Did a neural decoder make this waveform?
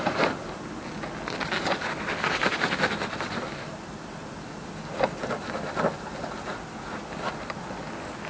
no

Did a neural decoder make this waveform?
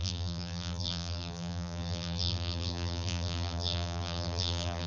yes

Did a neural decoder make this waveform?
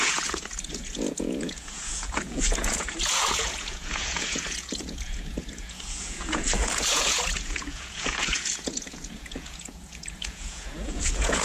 yes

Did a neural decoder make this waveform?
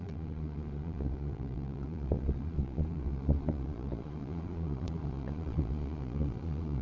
yes